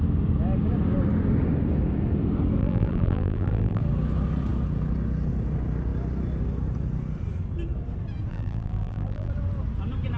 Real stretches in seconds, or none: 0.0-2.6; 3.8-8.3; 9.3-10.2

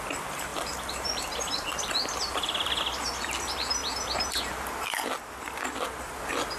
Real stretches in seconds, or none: 0.0-0.5; 2.8-6.6